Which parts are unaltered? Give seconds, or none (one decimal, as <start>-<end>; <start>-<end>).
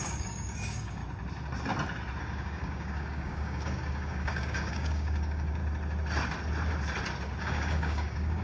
1.0-2.2; 5.6-7.4